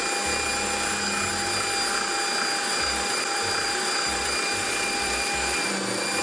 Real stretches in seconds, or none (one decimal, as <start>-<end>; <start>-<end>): 0.0-2.6; 5.6-6.2